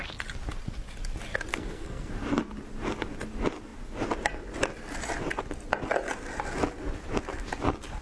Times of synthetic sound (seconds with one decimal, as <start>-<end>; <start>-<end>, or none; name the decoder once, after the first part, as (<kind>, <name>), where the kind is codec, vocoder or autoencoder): 1.5-2.1 (codec, SNAC)